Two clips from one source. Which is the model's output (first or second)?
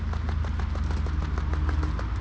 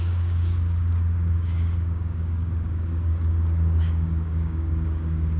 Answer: second